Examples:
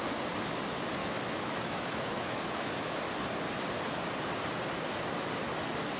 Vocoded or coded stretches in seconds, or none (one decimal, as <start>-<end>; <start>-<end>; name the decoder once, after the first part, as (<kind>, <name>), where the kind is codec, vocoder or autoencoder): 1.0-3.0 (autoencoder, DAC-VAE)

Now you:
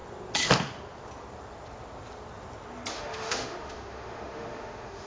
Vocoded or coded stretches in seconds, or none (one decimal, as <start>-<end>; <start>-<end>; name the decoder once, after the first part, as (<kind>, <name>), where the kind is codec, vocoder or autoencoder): 2.9-5.1 (autoencoder, DAC-VAE)

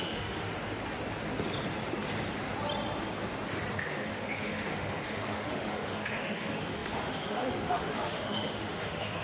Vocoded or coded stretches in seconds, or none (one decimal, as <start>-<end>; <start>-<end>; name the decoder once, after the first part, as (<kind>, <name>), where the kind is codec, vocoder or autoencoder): 0.0-0.5 (autoencoder, DAC-VAE); 3.7-9.2

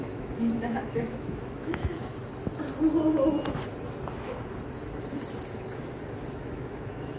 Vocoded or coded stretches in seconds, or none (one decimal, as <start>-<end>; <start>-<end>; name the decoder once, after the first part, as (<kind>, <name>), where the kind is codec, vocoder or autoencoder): 0.0-2.1 (autoencoder, DAC-VAE); 6.3-7.2

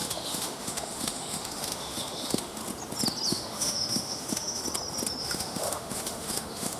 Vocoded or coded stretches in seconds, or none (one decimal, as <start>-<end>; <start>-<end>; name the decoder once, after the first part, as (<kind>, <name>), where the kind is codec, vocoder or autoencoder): 0.0-2.6 (autoencoder, DAC-VAE); 3.3-4.6; 5.2-6.8

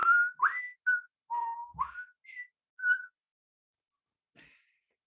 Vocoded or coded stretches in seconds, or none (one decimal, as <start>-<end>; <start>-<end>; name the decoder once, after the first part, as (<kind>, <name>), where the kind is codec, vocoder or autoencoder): none

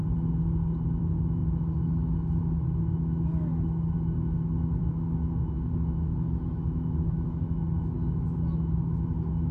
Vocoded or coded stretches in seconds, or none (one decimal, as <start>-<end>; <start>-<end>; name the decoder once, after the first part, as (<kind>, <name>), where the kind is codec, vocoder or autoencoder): 1.0-9.5 (autoencoder, DAC-VAE)

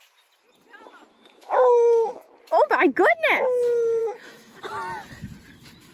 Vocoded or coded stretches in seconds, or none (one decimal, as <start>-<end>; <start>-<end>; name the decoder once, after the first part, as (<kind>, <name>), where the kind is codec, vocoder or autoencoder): 1.1-2.3 (autoencoder, DAC-VAE); 4.0-4.6